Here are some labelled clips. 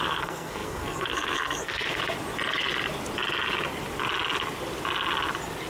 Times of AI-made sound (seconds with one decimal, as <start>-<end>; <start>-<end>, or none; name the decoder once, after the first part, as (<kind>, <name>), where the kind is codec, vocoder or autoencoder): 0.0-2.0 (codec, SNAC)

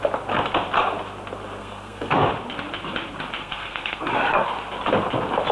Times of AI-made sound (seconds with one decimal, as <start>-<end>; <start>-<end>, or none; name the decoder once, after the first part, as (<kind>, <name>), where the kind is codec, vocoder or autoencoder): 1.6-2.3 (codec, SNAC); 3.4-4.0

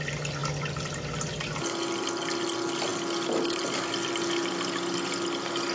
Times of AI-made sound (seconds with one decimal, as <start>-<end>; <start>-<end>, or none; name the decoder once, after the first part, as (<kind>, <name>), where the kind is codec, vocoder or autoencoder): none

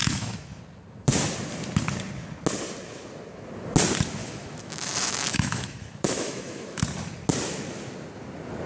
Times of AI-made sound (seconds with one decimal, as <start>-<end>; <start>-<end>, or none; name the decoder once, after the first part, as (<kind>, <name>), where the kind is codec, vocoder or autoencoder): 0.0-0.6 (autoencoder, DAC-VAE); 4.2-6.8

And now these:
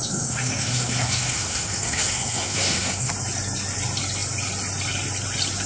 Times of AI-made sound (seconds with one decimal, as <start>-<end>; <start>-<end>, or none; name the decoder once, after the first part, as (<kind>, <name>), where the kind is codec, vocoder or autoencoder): 0.0-3.1 (codec, SNAC)

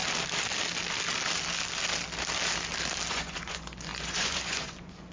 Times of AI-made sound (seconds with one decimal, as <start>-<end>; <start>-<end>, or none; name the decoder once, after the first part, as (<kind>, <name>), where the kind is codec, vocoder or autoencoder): 3.1-5.1 (vocoder, Vocos)

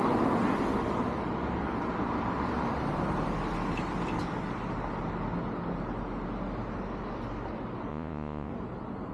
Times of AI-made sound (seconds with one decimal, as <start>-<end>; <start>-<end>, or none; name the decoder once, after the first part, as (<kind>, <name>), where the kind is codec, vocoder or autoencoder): 7.9-8.5 (vocoder, Vocos)

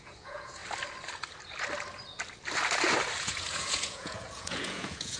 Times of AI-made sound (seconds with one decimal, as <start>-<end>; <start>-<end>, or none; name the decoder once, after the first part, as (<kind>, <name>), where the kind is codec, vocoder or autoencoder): 0.0-0.6 (vocoder, Vocos); 3.2-5.2